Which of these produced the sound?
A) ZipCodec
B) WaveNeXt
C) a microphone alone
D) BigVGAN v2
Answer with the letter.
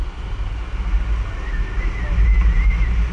C